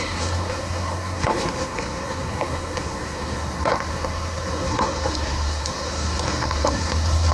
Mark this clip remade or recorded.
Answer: remade